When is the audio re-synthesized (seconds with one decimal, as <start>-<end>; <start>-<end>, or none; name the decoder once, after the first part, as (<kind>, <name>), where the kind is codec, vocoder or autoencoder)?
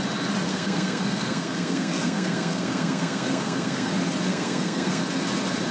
0.5-3.9 (codec, SNAC); 4.3-5.0